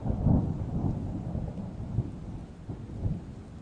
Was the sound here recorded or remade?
recorded